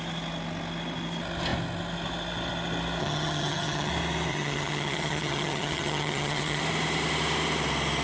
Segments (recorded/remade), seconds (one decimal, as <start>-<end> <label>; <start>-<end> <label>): 0.0-3.0 recorded; 3.0-3.9 remade; 3.9-4.3 recorded; 4.3-6.6 remade; 6.6-8.0 recorded

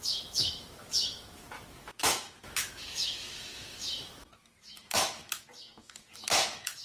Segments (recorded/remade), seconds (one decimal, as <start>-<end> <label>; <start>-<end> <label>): 0.0-6.8 remade